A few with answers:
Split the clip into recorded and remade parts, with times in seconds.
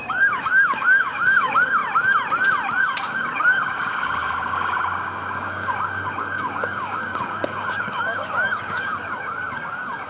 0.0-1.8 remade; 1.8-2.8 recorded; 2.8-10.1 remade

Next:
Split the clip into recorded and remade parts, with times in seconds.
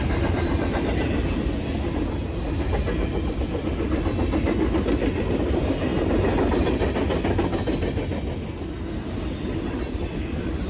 0.0-10.7 recorded